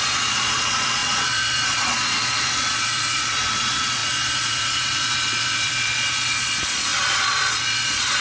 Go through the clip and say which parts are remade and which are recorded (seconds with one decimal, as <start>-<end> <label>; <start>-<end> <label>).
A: 0.0-8.2 remade